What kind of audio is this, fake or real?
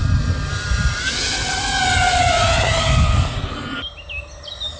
real